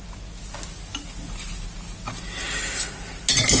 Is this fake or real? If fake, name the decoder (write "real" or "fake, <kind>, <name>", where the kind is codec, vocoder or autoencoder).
real